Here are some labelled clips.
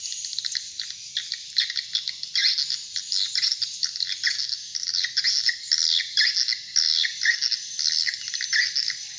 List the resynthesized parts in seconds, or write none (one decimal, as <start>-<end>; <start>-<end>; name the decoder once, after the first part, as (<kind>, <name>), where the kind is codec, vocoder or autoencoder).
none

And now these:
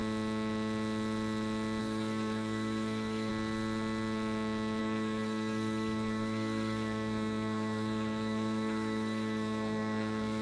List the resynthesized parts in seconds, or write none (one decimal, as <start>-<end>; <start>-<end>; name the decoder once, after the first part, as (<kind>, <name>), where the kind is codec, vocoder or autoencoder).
1.8-3.3 (codec, SNAC); 4.8-10.4

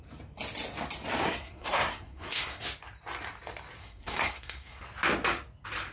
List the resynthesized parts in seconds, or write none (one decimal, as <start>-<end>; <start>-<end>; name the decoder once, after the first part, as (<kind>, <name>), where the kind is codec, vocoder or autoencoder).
1.2-2.6 (codec, SNAC); 3.8-4.8

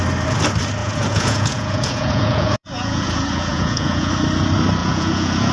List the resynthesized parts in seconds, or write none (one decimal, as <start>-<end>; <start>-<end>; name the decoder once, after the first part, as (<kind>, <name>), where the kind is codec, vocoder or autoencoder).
0.8-4.1 (vocoder, Vocos); 4.8-5.5

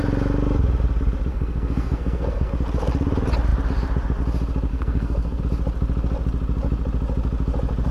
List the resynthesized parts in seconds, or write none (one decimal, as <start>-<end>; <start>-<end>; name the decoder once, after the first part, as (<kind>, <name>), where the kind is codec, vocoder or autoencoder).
1.3-2.5 (codec, SNAC); 4.7-5.4